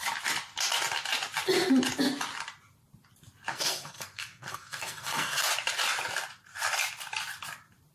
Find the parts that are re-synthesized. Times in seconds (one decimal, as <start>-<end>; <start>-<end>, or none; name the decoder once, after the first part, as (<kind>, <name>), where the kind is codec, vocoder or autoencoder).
3.5-5.5 (codec, SNAC)